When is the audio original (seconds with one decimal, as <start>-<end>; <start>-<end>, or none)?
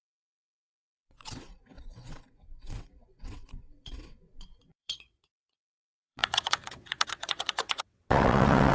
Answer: none